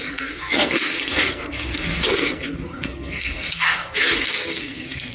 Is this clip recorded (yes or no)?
no